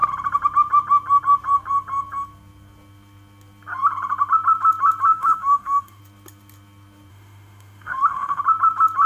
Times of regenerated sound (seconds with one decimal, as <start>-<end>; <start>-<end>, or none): 5.1-6.0; 7.1-8.4